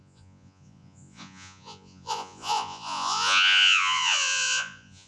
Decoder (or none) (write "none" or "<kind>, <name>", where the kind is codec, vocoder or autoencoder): vocoder, Vocos